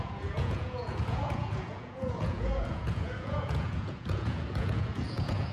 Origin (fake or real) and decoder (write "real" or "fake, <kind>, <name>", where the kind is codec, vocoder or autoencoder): fake, vocoder, Vocos